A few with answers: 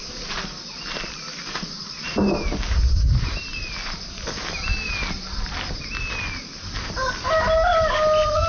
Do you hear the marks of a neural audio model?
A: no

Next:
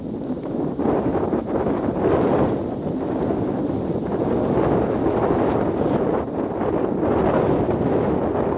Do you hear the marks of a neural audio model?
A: yes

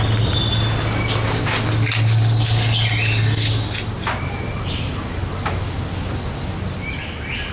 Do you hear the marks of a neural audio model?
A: no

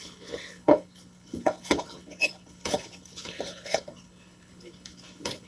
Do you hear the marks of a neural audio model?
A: yes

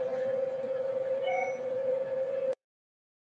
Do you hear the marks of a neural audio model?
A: yes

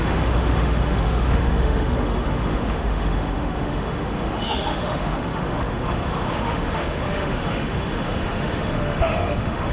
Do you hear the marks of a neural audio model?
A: yes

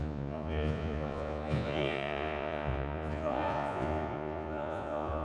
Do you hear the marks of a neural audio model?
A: yes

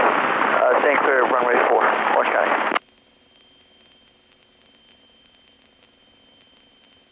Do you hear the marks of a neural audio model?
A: no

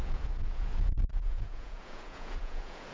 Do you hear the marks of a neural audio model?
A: yes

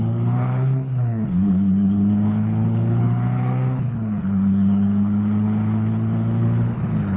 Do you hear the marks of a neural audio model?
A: yes